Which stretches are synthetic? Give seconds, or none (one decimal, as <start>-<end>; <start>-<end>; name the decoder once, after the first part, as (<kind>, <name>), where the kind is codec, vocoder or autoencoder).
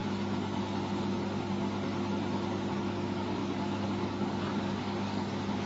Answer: 2.7-5.7 (codec, DAC)